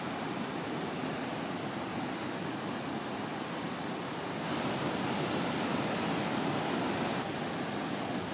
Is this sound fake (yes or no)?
no